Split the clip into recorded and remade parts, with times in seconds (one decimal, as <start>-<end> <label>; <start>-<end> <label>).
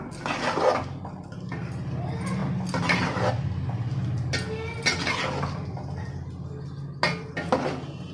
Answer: 0.0-8.1 recorded